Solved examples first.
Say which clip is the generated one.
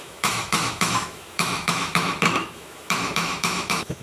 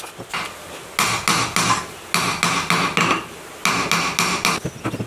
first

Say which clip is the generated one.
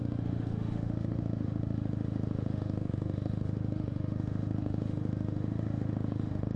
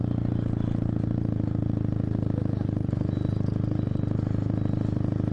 first